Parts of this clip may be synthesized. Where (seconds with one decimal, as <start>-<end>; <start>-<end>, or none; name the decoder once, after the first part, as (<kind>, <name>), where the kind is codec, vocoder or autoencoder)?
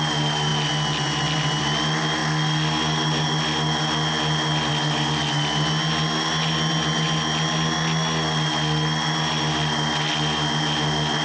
none